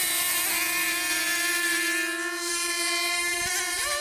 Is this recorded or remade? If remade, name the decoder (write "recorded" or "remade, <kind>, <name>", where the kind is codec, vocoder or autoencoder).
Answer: remade, vocoder, BigVGAN v2